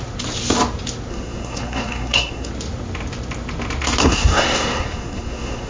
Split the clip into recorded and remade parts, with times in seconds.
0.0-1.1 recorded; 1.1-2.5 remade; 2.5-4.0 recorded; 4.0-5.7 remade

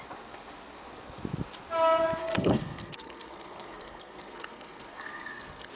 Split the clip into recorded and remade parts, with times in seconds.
0.0-2.2 recorded; 2.2-5.7 remade

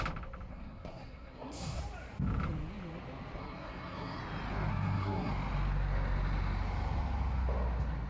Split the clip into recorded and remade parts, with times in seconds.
0.0-0.5 recorded; 0.5-1.8 remade; 1.8-3.4 recorded; 3.4-4.2 remade; 4.2-4.7 recorded; 4.7-5.3 remade; 5.3-8.1 recorded

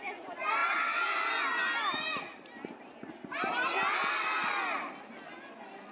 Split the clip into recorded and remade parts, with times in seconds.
0.0-5.9 recorded

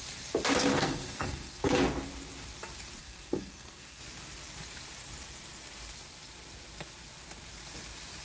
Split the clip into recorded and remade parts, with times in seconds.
0.0-0.7 recorded; 0.7-1.7 remade; 1.7-3.0 recorded; 3.0-4.0 remade; 4.0-8.2 recorded

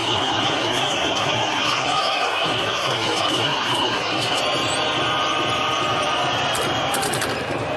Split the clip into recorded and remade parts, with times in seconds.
0.0-4.4 remade; 4.4-7.8 recorded

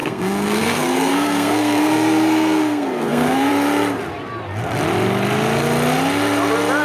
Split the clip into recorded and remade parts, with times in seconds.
0.0-3.5 remade; 3.5-6.8 recorded

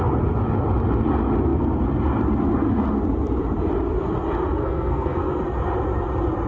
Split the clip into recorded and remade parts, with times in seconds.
0.0-4.6 recorded; 4.6-5.4 remade; 5.4-6.5 recorded